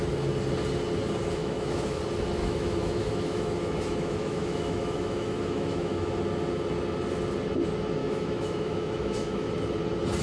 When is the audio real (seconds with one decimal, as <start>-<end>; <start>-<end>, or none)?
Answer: 0.0-1.4; 2.0-2.4; 6.2-8.0; 9.5-10.2